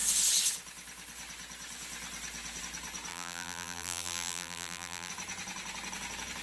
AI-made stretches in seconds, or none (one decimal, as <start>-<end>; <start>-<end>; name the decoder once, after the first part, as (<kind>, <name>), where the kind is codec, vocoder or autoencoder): 3.1-5.1 (vocoder, BigVGAN v2)